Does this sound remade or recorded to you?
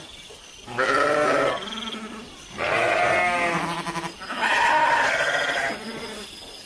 recorded